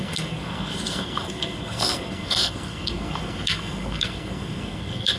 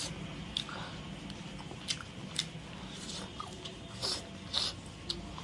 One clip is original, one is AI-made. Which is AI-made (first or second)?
first